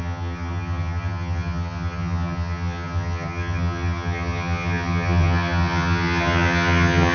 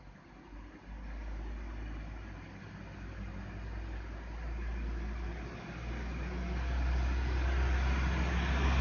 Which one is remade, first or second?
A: first